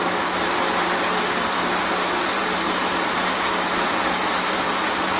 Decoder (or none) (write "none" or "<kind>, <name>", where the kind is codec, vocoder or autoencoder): none